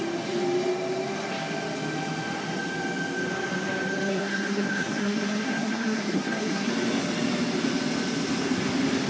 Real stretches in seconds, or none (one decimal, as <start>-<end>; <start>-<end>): 0.0-4.1; 6.7-9.1